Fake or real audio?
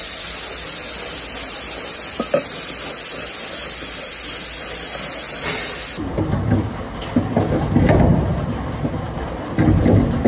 real